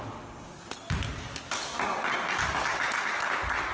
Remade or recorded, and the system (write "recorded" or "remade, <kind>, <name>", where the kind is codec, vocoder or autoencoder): recorded